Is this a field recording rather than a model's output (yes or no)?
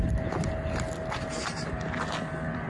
yes